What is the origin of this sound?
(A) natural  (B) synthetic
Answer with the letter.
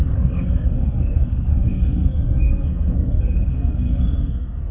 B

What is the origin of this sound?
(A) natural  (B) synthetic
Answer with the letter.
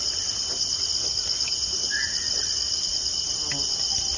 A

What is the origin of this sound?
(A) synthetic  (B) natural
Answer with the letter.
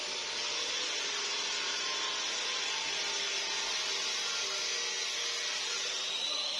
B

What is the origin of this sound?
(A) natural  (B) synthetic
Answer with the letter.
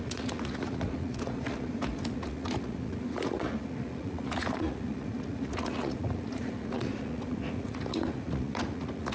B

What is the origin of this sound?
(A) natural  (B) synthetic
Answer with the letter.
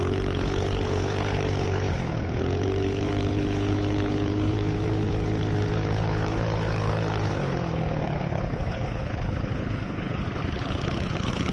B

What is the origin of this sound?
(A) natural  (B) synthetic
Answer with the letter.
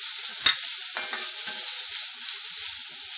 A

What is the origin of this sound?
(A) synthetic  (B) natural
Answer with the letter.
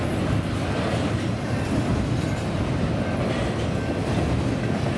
B